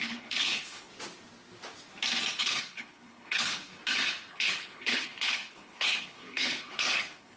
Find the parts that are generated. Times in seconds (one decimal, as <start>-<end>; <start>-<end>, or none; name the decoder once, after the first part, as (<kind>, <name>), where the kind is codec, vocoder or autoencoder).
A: 0.0-0.9 (codec, HILCodec); 2.4-3.7; 4.3-7.4